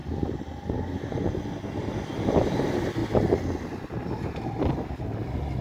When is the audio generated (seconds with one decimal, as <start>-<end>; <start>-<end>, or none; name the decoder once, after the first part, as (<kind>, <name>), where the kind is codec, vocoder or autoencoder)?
0.0-1.8 (vocoder, BigVGAN v2)